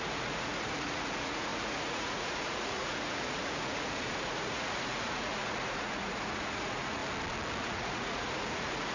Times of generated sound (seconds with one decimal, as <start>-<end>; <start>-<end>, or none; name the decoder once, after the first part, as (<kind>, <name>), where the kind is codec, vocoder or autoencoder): 0.0-7.0 (vocoder, Vocos); 7.6-8.9